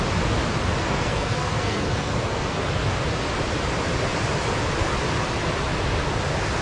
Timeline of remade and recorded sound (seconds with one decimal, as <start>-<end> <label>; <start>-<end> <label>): 0.0-0.8 recorded; 0.8-2.6 remade; 2.6-6.6 recorded